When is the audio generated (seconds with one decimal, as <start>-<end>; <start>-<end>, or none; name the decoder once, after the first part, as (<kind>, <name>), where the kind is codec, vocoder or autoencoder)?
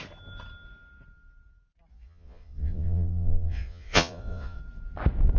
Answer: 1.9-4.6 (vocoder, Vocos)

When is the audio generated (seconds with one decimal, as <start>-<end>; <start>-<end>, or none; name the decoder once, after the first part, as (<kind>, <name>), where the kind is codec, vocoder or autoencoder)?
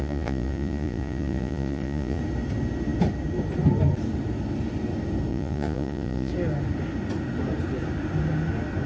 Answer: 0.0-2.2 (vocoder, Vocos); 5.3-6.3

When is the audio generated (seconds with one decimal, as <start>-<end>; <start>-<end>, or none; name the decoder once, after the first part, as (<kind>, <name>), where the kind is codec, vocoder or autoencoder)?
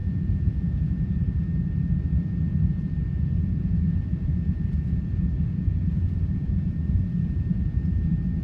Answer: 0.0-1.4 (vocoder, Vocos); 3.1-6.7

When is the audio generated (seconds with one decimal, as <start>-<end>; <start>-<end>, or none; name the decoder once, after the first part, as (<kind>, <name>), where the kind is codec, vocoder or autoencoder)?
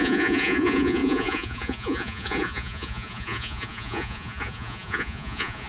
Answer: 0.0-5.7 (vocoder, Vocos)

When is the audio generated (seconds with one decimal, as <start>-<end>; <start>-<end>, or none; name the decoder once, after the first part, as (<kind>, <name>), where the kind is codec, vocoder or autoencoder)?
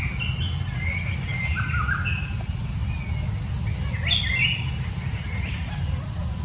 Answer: none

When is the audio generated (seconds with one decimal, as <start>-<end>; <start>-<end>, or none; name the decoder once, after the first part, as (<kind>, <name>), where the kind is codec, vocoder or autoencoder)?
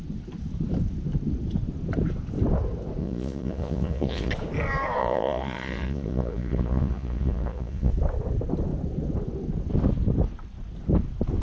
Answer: 3.0-4.3 (vocoder, Vocos); 5.0-7.9